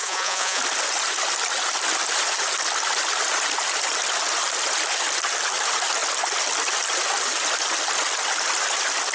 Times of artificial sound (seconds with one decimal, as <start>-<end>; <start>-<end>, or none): 0.0-0.6